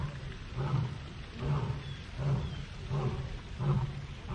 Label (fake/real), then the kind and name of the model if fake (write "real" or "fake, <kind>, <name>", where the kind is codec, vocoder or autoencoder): real